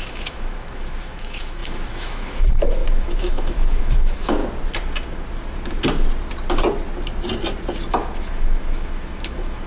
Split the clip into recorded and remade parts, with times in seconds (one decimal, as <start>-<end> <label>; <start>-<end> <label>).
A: 0.0-4.4 remade; 4.4-7.9 recorded; 7.9-9.7 remade